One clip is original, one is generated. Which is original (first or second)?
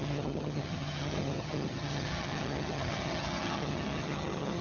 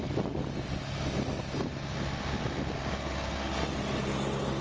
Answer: second